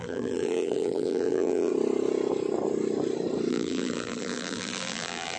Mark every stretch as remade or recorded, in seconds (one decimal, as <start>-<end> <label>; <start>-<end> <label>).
0.0-1.7 remade; 1.7-3.5 recorded; 3.5-5.4 remade